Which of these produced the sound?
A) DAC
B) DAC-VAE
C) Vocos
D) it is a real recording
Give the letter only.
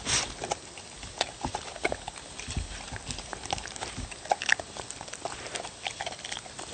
D